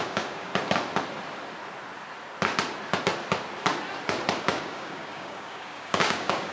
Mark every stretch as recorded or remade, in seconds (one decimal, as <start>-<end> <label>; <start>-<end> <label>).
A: 0.0-0.5 remade; 0.5-4.4 recorded; 4.4-6.5 remade

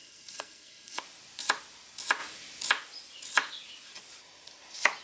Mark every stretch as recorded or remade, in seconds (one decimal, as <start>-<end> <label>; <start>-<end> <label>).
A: 0.0-1.0 remade; 1.0-5.0 recorded

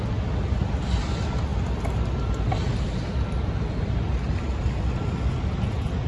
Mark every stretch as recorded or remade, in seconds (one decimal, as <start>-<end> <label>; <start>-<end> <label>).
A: 0.0-6.1 recorded

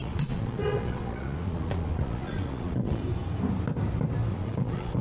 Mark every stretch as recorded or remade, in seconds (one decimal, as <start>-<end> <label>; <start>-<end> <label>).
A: 0.0-3.0 remade; 3.0-4.3 recorded; 4.3-5.0 remade